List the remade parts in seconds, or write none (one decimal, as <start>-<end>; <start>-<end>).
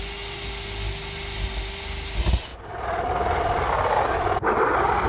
none